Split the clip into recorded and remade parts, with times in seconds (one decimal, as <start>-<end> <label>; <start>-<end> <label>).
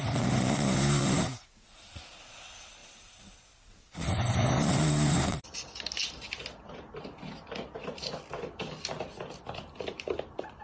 0.0-10.6 recorded